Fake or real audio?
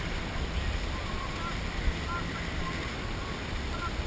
real